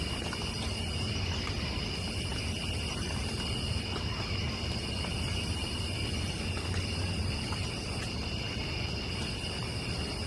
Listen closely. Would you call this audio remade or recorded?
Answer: recorded